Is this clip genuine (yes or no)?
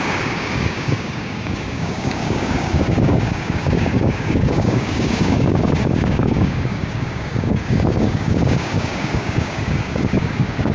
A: no